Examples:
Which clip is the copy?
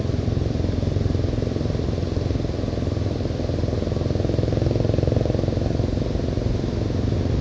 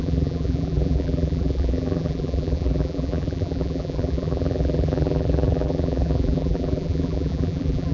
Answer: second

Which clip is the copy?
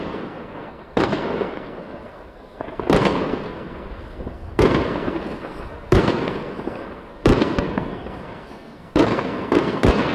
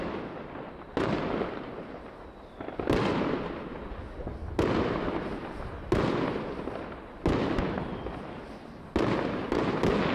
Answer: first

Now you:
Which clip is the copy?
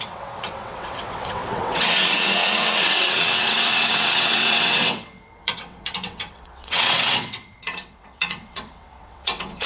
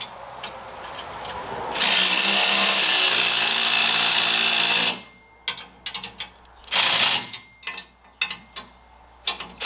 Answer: first